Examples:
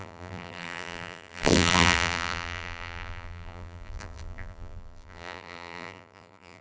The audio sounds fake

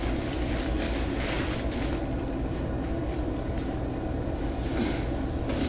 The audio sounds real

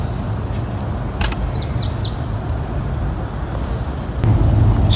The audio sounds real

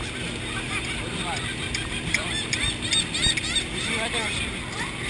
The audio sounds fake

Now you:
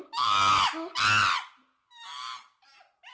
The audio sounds real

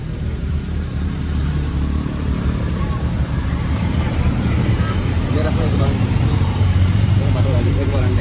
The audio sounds fake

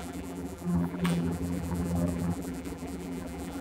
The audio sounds fake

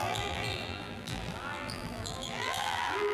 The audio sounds fake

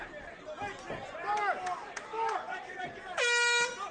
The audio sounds real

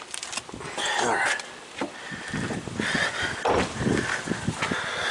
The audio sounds real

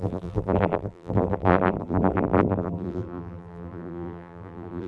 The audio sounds fake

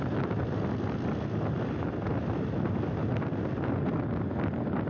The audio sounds real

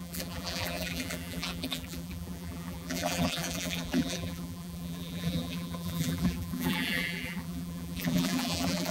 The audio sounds fake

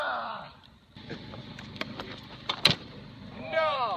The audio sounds fake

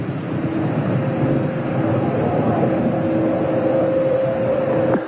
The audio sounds real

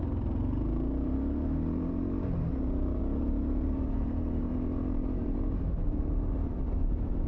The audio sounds fake